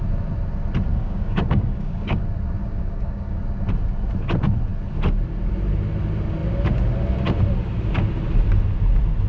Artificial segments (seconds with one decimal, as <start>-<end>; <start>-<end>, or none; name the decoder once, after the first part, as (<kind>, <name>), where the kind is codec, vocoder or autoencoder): 0.9-2.2 (codec, DAC); 2.6-3.4

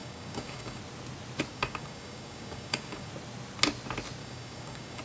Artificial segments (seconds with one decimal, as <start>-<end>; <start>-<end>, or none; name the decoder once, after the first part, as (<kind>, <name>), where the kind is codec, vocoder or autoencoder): 0.0-0.8 (codec, DAC); 1.5-3.1; 4.2-5.0

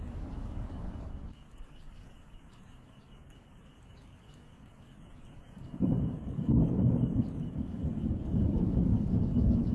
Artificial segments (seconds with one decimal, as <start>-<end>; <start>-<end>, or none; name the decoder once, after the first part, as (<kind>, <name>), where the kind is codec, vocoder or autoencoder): 0.0-9.7 (codec, DAC)